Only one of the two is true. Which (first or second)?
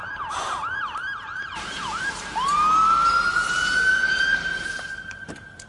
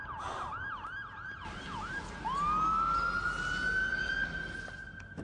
second